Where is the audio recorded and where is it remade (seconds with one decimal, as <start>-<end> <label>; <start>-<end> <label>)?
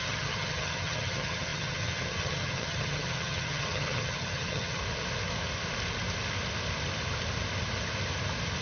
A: 0.0-4.8 remade; 4.8-8.6 recorded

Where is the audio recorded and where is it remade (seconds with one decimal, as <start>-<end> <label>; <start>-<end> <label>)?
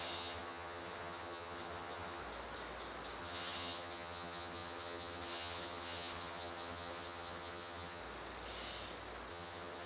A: 0.0-2.2 remade; 2.2-3.2 recorded; 3.2-8.0 remade; 8.0-9.3 recorded; 9.3-9.9 remade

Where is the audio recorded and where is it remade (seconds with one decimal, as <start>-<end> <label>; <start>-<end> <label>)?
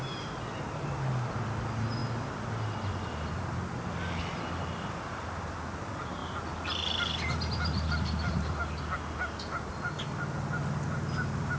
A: 0.0-11.6 recorded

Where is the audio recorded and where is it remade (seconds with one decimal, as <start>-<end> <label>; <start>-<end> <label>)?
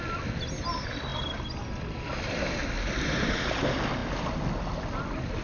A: 0.0-5.4 recorded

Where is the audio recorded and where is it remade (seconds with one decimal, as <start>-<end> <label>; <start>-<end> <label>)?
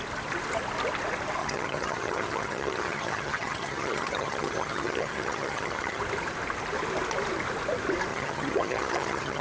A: 0.0-1.4 recorded; 1.4-6.0 remade; 6.0-8.1 recorded; 8.1-9.4 remade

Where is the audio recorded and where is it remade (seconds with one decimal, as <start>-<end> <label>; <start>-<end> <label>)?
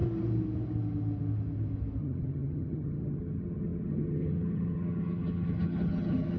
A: 0.0-2.0 recorded; 2.0-6.4 remade